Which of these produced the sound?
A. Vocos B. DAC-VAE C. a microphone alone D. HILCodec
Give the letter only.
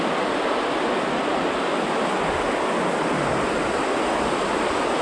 C